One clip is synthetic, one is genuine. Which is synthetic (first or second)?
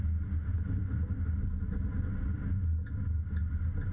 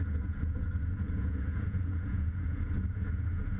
second